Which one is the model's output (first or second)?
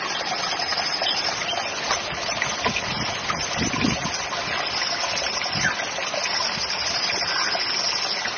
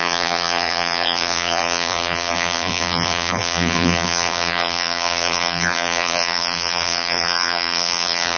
second